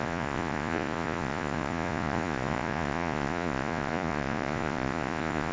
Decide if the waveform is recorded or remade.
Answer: remade